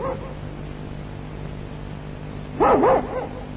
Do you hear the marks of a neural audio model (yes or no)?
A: no